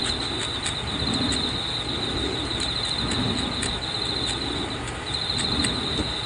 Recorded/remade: recorded